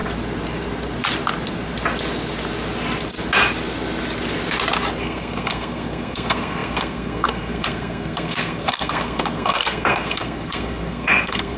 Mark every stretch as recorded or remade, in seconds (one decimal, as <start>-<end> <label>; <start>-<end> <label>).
0.0-5.0 recorded; 5.0-11.6 remade